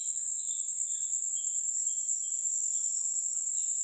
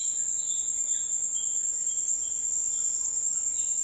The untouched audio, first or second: second